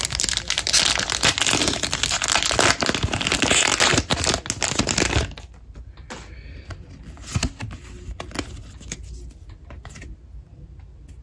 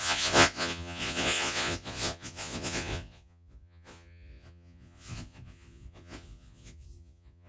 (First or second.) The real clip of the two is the first